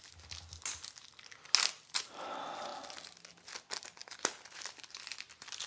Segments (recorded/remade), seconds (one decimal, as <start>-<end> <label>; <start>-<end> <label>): 0.0-5.7 recorded